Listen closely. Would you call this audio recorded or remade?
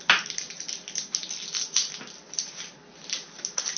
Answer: recorded